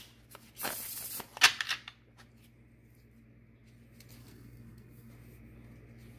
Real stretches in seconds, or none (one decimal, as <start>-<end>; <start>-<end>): 0.0-4.2; 5.1-6.2